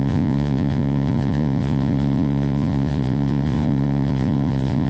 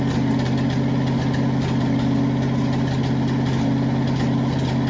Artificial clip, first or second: first